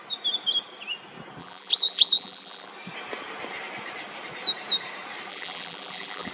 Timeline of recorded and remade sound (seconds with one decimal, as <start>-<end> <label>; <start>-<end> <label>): 0.0-1.4 recorded; 1.4-2.7 remade; 2.7-5.3 recorded; 5.3-6.3 remade